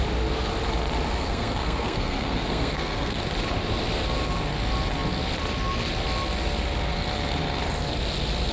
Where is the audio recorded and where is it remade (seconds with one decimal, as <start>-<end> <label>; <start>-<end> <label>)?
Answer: 0.0-1.2 recorded; 1.2-3.2 remade; 3.2-8.5 recorded